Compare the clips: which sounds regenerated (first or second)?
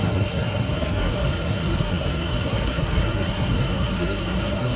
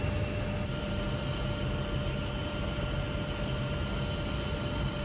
first